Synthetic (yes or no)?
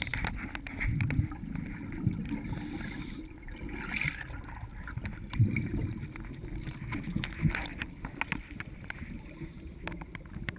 no